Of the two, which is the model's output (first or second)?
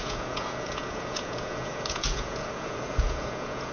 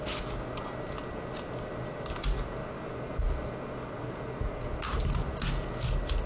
first